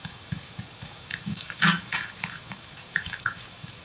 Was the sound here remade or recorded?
remade